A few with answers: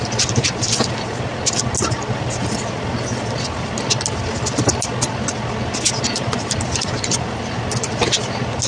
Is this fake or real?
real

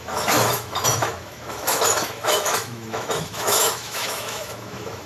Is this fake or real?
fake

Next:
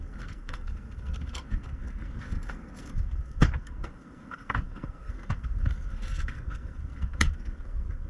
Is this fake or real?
fake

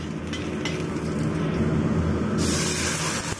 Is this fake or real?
real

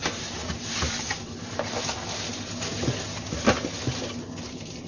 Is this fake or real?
real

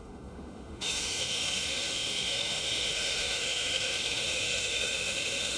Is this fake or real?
fake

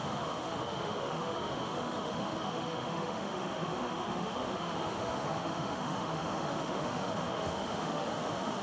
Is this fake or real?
fake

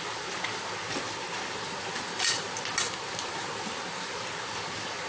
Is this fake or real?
real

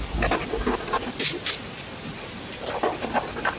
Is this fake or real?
real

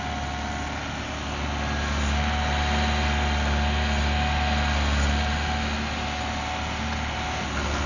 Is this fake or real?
real